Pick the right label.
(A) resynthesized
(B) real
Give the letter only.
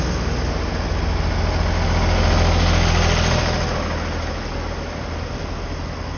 B